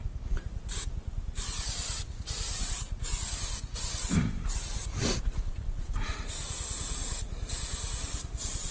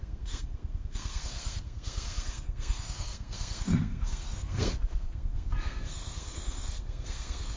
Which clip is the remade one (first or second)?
second